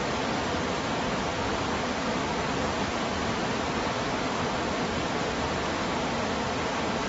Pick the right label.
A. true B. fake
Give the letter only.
A